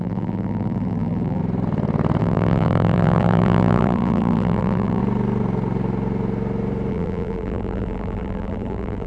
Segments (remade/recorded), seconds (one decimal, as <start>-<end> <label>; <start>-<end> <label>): 0.0-1.4 remade; 1.4-2.2 recorded; 2.2-5.0 remade; 5.0-6.9 recorded; 6.9-9.1 remade